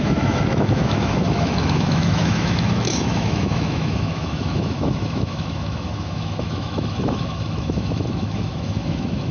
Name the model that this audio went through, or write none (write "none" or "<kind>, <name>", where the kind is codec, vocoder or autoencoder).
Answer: autoencoder, DAC-VAE